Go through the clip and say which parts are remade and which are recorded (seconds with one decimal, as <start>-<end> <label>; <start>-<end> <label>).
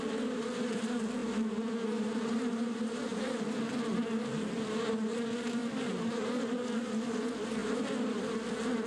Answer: 0.0-8.9 recorded